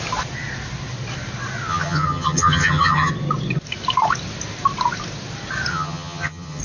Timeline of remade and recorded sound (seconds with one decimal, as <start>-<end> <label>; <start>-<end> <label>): 0.0-1.7 recorded; 1.7-3.1 remade; 3.1-5.7 recorded; 5.7-6.6 remade